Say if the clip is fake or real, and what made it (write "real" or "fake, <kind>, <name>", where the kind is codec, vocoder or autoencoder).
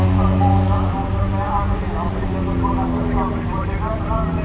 real